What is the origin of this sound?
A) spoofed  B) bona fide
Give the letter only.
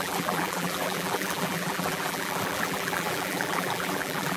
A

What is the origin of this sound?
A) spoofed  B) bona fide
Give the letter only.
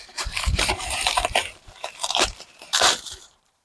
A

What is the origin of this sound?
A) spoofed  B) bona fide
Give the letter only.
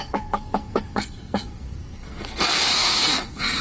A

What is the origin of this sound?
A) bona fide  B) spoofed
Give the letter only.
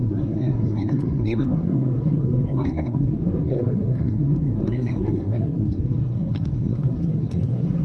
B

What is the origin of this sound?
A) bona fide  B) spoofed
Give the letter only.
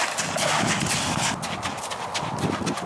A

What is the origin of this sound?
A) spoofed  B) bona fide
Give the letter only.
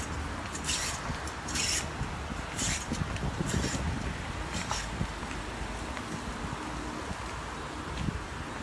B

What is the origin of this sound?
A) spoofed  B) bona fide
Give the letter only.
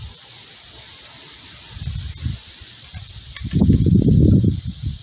B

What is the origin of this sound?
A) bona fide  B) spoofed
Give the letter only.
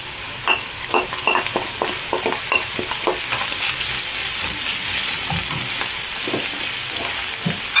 B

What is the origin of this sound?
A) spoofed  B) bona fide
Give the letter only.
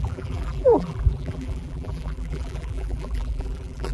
A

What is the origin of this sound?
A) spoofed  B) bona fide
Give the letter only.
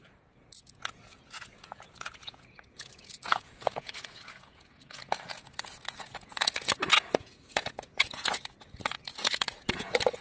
A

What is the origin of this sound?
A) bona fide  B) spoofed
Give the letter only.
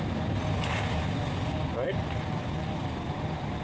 A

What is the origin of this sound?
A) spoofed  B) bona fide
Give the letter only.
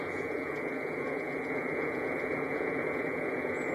A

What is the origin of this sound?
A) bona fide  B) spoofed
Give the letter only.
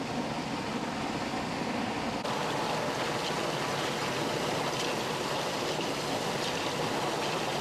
A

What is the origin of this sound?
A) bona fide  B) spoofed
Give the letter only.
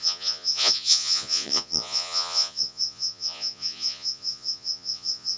B